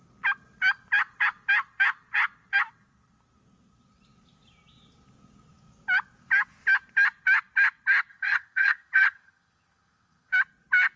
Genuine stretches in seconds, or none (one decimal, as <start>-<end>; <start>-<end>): 0.0-8.1; 10.3-11.0